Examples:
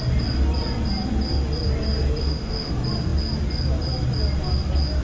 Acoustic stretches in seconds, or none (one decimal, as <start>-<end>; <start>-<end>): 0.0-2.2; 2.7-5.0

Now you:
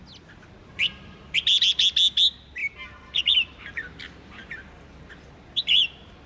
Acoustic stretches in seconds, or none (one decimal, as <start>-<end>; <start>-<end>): 0.0-0.6; 1.5-2.6; 4.0-6.3

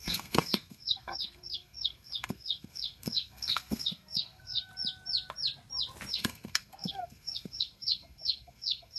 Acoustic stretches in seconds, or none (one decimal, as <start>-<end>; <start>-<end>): 4.7-6.1

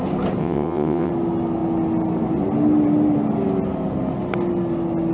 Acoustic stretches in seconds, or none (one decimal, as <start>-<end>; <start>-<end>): 0.0-0.4; 1.1-5.1